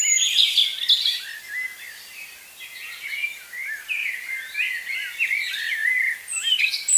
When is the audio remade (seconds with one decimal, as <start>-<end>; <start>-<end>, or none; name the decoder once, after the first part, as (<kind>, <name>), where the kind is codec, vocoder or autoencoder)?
0.0-0.7 (vocoder, BigVGAN v2); 4.9-5.8; 6.6-7.0